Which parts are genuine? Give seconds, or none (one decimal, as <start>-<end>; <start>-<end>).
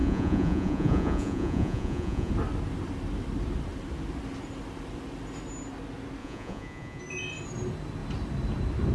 2.3-6.2; 7.0-8.9